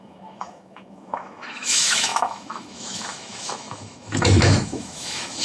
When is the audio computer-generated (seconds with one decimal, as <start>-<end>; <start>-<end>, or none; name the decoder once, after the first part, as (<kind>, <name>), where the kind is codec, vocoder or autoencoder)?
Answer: 0.0-5.4 (autoencoder, DAC-VAE)

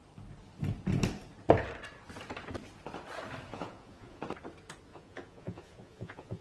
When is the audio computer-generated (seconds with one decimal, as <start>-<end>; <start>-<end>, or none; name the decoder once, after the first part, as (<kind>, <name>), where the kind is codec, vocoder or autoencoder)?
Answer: 3.5-4.2 (vocoder, Vocos); 4.9-6.4

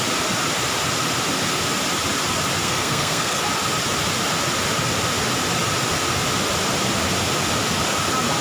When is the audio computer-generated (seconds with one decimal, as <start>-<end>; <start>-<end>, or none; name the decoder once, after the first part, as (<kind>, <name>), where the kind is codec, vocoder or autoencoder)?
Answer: 2.6-3.4 (codec, SNAC)

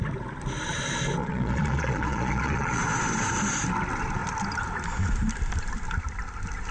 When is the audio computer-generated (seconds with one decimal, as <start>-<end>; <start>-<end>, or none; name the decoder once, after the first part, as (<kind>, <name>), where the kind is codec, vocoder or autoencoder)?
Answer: 1.2-2.8 (vocoder, Vocos)